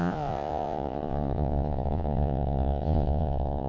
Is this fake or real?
fake